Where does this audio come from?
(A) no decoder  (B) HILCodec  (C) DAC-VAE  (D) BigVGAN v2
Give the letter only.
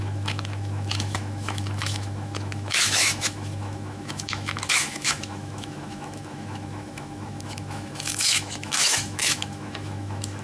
C